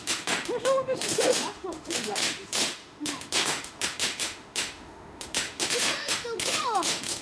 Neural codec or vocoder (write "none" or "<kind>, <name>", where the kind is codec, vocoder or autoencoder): autoencoder, DAC-VAE